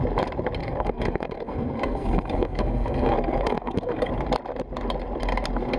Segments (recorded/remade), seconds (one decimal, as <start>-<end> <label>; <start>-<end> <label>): 0.0-0.6 recorded; 0.6-4.1 remade; 4.1-5.8 recorded

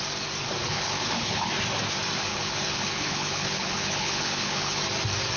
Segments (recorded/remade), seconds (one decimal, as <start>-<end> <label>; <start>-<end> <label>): 0.0-0.6 recorded; 0.6-1.5 remade; 1.5-2.3 recorded; 2.3-4.8 remade; 4.8-5.4 recorded

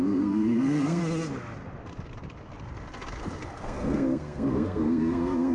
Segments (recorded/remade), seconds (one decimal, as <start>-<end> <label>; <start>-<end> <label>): 0.0-1.0 remade; 1.0-3.6 recorded; 3.6-5.5 remade